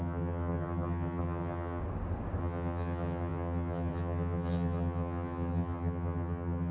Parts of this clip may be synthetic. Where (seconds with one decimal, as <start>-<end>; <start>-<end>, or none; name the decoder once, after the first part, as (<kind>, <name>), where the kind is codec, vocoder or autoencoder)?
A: 0.0-1.8 (vocoder, HiFi-GAN); 2.4-6.7